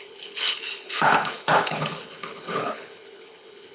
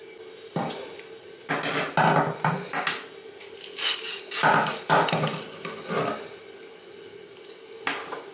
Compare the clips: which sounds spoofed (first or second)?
first